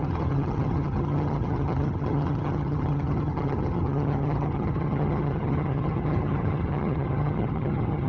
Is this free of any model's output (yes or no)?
no